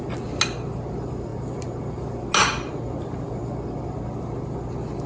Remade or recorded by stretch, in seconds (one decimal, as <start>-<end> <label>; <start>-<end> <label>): 0.0-5.1 recorded